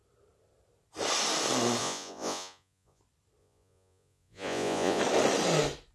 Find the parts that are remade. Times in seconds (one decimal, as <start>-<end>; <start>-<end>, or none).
1.8-3.0; 3.4-5.0